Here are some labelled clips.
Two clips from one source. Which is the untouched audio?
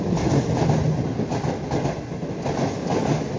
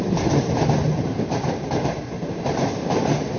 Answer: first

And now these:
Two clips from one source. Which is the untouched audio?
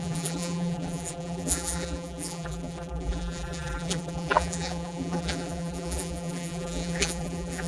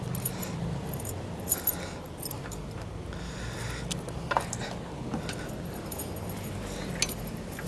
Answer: second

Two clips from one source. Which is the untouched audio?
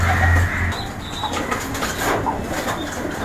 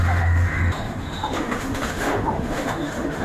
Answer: first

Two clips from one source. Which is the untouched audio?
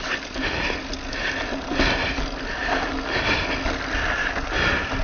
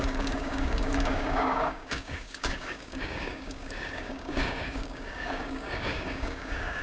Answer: first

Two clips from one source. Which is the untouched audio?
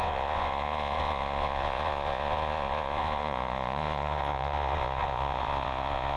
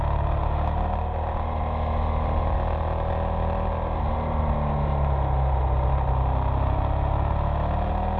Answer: second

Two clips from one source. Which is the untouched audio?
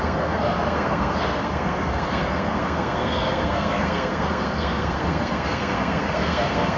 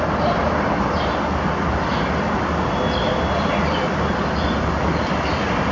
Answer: second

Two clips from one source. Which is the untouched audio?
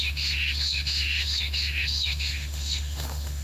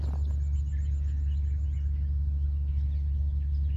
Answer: second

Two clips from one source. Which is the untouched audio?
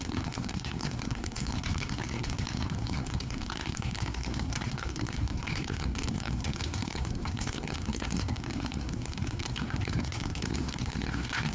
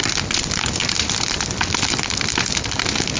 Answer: second